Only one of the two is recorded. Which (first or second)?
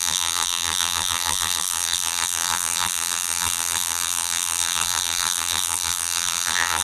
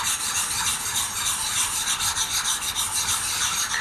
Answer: second